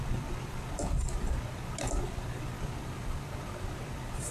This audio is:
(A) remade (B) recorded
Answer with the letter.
B